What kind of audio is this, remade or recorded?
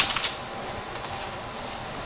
recorded